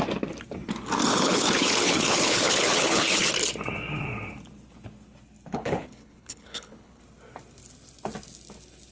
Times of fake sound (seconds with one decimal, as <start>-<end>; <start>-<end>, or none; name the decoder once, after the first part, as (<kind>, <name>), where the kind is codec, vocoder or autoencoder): 1.1-3.3 (codec, HILCodec); 5.5-7.0